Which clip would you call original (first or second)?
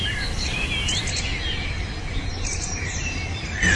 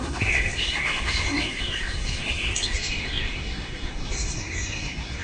first